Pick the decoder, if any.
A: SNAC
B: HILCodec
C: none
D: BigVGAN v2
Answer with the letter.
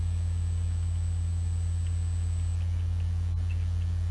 C